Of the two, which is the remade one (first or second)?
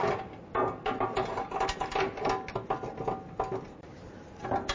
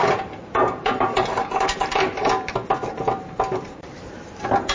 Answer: second